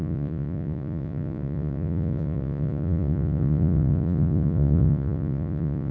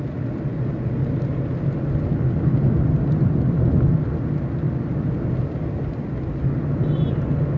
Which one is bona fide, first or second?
second